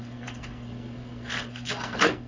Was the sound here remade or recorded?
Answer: remade